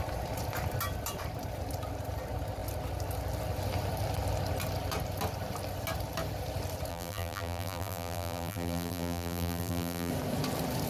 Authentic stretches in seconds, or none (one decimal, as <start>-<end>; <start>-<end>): 0.0-6.9; 10.1-10.9